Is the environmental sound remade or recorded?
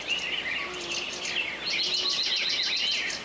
recorded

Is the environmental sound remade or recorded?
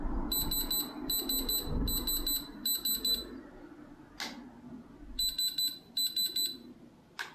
recorded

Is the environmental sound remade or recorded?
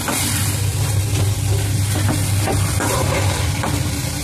recorded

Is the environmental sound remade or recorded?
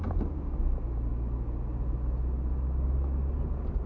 recorded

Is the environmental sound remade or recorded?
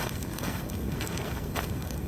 remade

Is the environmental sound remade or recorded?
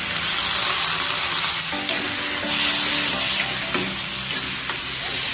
recorded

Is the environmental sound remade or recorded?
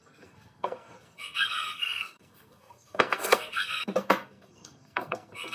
remade